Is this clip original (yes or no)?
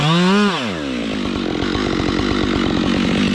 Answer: yes